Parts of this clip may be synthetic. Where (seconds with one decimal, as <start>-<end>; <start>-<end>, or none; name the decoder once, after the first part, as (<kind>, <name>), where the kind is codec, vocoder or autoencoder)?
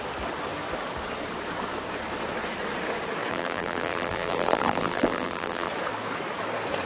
3.3-5.7 (vocoder, BigVGAN v2)